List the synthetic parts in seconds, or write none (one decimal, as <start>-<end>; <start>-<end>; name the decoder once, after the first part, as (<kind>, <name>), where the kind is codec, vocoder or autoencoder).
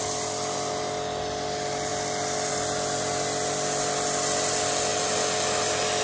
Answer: none